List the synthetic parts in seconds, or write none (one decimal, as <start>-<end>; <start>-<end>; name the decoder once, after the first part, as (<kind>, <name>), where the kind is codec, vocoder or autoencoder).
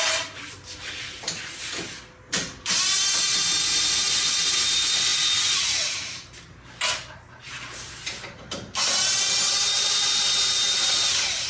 none